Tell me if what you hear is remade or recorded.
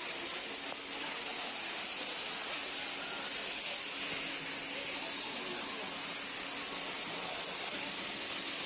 recorded